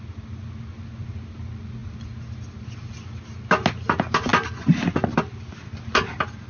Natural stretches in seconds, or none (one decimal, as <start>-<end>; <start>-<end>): 0.0-6.5